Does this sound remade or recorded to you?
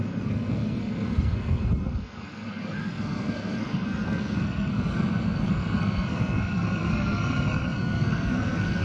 remade